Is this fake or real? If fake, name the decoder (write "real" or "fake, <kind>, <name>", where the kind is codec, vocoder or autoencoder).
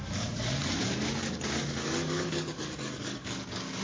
fake, codec, DAC